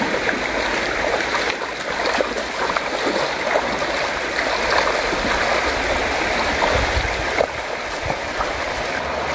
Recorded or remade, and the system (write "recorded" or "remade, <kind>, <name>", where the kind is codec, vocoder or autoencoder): recorded